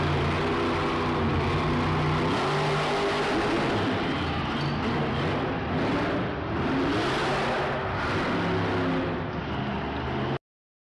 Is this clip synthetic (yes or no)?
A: no